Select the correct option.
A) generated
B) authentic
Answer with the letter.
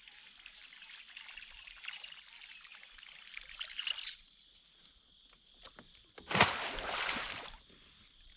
B